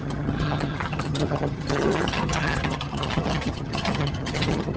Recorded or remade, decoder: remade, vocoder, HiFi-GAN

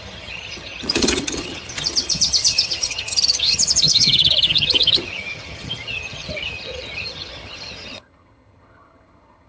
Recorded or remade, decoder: remade, vocoder, HiFi-GAN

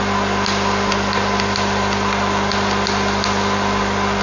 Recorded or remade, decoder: recorded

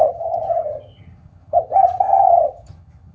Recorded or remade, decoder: remade, vocoder, HiFi-GAN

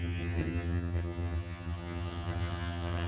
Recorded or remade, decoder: remade, vocoder, HiFi-GAN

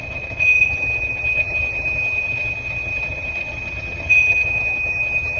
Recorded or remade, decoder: remade, vocoder, HiFi-GAN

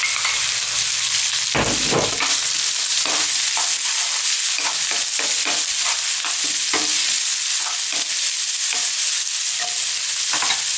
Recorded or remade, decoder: recorded